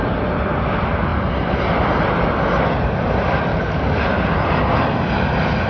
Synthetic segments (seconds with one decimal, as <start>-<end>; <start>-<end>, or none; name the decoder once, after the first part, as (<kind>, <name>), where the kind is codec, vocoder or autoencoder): 3.5-4.0 (codec, DAC)